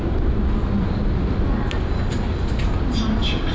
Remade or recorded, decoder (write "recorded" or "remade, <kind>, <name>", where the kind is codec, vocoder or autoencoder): recorded